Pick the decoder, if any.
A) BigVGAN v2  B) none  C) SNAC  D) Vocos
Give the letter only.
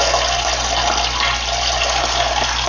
B